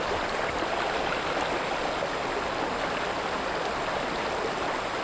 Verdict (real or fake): real